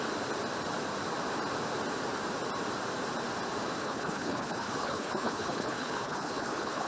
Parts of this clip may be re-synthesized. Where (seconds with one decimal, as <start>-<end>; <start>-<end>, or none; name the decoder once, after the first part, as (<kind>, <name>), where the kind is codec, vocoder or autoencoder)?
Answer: 3.8-6.9 (codec, HILCodec)